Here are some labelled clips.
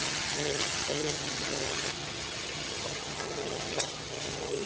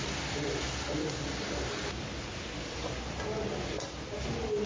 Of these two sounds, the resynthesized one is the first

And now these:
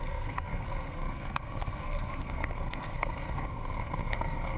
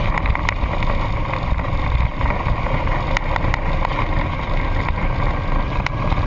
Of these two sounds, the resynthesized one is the first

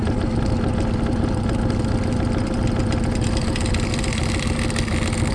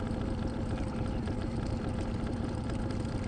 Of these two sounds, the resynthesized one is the second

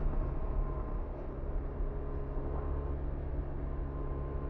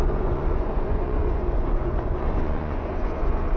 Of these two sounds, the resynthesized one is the second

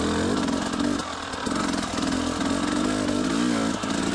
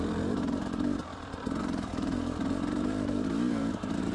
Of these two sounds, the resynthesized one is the second